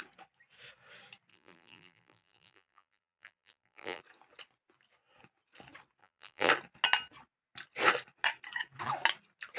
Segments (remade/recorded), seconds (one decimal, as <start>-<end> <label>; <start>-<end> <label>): 0.0-1.3 recorded; 1.3-4.0 remade; 4.0-6.0 recorded; 6.0-6.5 remade; 6.5-9.6 recorded